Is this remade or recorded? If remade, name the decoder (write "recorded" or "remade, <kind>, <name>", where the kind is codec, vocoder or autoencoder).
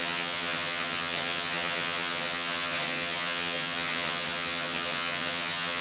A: remade, vocoder, HiFi-GAN